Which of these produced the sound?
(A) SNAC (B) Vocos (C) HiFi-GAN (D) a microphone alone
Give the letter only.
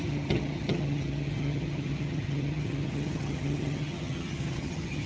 C